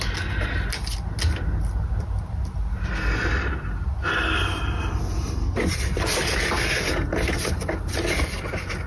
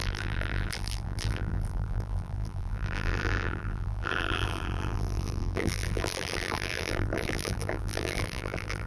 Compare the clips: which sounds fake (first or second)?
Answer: second